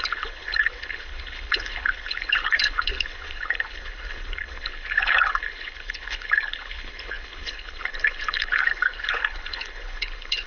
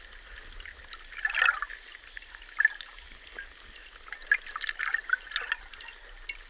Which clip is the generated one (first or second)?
first